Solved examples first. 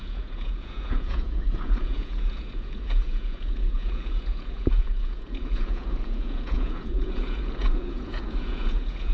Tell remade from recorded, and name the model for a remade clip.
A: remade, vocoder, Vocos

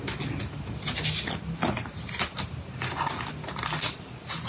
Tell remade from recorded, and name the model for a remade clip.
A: recorded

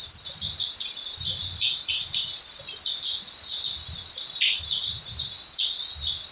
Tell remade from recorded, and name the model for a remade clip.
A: recorded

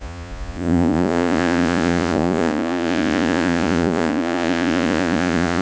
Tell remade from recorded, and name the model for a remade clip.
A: remade, vocoder, Vocos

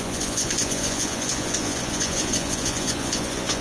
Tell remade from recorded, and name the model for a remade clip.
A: remade, vocoder, Vocos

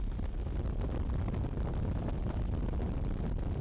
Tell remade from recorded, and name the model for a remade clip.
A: recorded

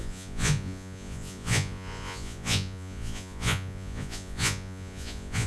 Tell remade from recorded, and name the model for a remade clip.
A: remade, vocoder, Vocos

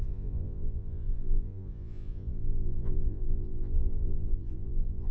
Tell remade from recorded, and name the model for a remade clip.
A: remade, vocoder, Vocos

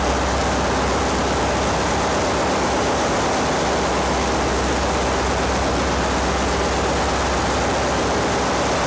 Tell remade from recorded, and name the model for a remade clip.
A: recorded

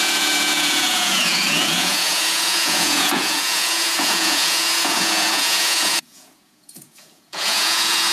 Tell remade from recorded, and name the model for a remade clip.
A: remade, vocoder, Vocos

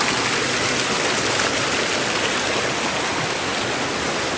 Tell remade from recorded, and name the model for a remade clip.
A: recorded